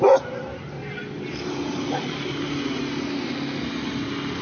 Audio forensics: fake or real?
real